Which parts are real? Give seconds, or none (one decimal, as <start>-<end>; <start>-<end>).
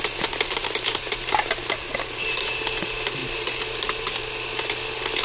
0.0-0.9; 1.6-3.2; 4.3-5.2